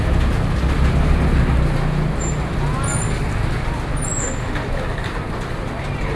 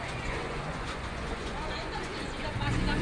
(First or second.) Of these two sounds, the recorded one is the first